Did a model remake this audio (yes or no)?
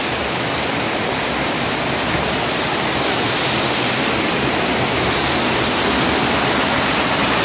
no